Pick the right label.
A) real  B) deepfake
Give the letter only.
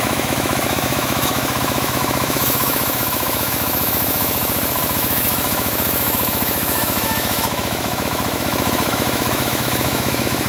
B